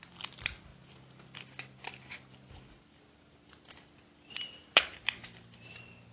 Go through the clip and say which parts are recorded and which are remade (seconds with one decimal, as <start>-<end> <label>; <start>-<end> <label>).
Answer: 0.0-6.1 recorded